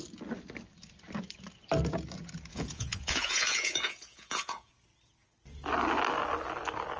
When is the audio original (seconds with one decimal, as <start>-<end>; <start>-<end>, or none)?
0.0-2.5; 4.7-7.0